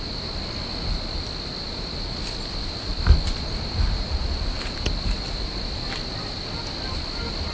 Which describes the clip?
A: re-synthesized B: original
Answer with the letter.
B